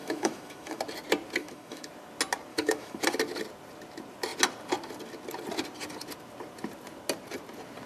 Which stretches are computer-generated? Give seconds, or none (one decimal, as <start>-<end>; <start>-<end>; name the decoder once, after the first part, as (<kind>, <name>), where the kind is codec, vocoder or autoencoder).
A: 0.0-0.8 (autoencoder, DAC-VAE); 1.4-1.9; 2.5-3.0